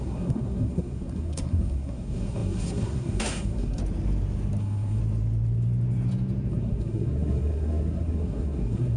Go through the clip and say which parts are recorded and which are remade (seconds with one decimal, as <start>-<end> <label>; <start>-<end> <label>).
0.0-3.8 remade; 3.8-4.6 recorded; 4.6-5.0 remade; 5.0-6.5 recorded; 6.5-9.0 remade

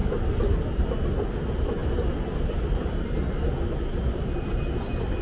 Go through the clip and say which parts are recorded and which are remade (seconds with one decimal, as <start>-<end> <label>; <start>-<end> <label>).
0.0-1.4 recorded; 1.4-1.8 remade; 1.8-3.9 recorded; 3.9-5.2 remade

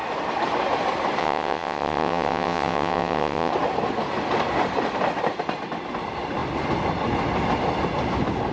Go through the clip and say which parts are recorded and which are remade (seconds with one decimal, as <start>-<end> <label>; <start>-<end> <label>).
0.0-1.2 recorded; 1.2-3.5 remade; 3.5-8.5 recorded

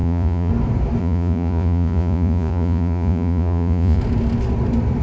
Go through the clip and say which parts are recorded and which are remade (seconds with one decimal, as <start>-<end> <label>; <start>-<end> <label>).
0.0-0.5 remade; 0.5-1.0 recorded; 1.0-4.0 remade; 4.0-5.0 recorded

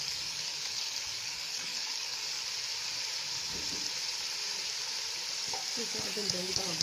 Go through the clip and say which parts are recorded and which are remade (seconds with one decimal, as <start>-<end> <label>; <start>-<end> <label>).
0.0-2.4 remade; 2.4-6.1 recorded; 6.1-6.8 remade

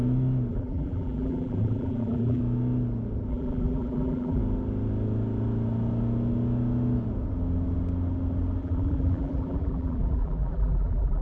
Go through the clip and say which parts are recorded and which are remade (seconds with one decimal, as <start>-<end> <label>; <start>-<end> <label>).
0.0-0.5 recorded; 0.5-2.4 remade; 2.4-3.3 recorded; 3.3-4.4 remade; 4.4-8.6 recorded; 8.6-11.2 remade

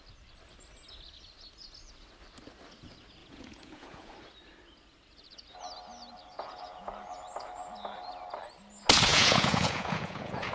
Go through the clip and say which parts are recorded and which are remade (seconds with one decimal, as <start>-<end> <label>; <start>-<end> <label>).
0.0-3.2 recorded; 3.2-4.1 remade; 4.1-6.3 recorded; 6.3-6.9 remade; 6.9-9.1 recorded; 9.1-10.5 remade